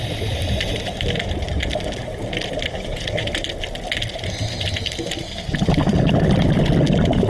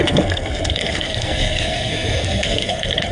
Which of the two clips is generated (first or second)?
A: second